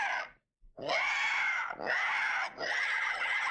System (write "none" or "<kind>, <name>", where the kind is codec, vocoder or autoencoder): none